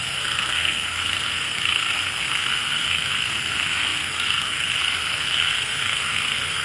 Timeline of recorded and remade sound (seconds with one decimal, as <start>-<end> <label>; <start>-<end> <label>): 0.0-6.6 remade